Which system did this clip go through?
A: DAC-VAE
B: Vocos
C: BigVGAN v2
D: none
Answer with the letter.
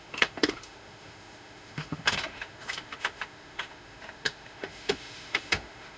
A